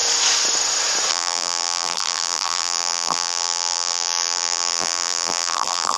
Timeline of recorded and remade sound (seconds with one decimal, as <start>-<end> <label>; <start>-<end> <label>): 0.0-1.1 recorded; 1.1-6.0 remade